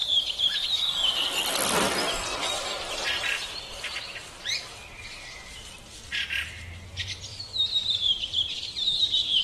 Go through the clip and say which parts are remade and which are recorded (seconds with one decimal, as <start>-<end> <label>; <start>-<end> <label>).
0.0-0.8 remade; 0.8-2.3 recorded; 2.3-4.3 remade; 4.3-7.3 recorded; 7.3-9.4 remade